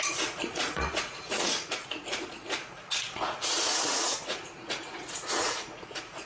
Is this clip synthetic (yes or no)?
yes